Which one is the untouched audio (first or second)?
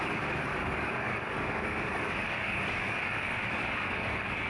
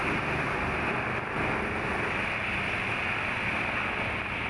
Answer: second